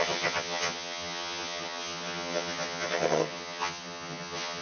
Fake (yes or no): yes